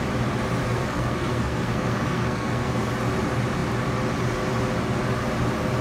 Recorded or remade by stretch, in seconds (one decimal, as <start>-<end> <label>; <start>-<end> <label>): 0.0-0.6 recorded; 0.6-2.9 remade; 2.9-5.8 recorded